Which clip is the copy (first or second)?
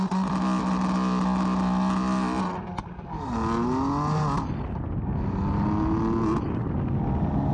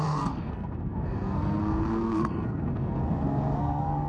second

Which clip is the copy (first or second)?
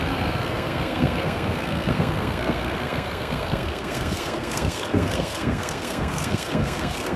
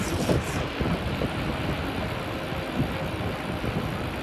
first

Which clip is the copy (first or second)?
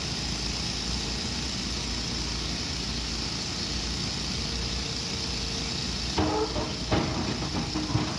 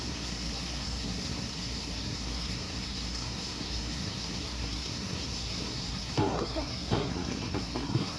second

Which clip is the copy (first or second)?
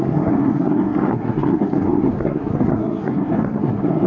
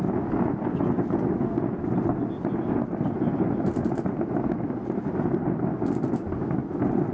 first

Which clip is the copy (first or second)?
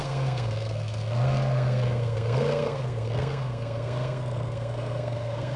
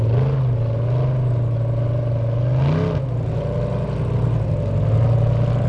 first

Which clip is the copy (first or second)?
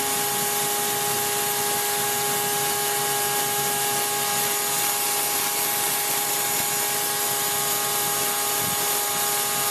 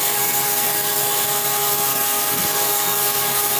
second